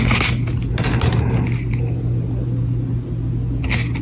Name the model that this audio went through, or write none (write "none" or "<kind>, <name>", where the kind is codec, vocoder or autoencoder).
none